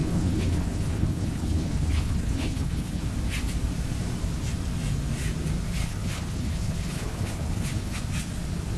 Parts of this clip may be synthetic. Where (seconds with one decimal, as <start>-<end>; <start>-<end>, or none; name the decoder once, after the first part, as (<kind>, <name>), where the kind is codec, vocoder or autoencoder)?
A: 0.0-3.0 (codec, HILCodec); 5.8-8.0

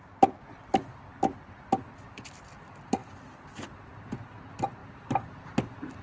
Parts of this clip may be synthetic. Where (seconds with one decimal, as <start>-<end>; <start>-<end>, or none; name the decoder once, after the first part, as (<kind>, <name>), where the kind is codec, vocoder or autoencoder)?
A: 3.0-3.9 (vocoder, BigVGAN v2); 4.8-5.5

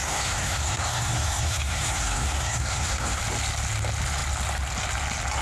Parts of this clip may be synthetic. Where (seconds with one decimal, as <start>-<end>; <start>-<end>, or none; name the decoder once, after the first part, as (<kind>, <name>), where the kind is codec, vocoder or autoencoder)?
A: 0.0-3.2 (codec, SNAC)

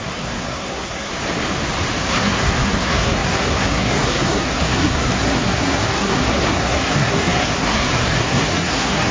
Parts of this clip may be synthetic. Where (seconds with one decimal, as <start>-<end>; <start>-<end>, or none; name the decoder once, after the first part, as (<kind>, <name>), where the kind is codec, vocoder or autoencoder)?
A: 0.0-1.1 (codec, SNAC); 2.1-9.1

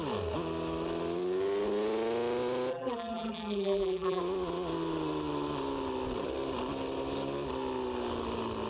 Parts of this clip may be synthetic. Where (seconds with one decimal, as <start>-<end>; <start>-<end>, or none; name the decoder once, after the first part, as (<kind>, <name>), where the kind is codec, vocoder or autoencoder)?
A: 2.7-4.2 (vocoder, BigVGAN v2)

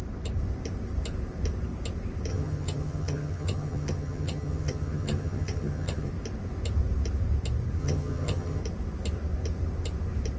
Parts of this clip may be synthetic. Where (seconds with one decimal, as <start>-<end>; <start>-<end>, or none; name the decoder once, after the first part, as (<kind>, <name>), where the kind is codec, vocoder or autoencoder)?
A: 2.3-6.1 (vocoder, HiFi-GAN); 7.8-8.6

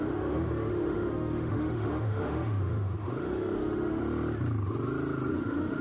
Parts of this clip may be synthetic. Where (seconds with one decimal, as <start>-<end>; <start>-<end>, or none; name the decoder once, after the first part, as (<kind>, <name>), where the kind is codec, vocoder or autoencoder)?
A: 0.0-4.0 (autoencoder, DAC-VAE); 5.3-5.8

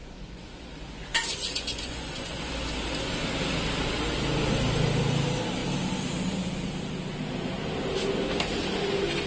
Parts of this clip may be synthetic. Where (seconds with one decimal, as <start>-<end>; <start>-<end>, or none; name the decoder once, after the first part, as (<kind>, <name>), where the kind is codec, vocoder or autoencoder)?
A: 0.0-2.5 (vocoder, Vocos)